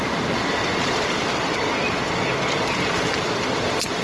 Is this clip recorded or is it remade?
remade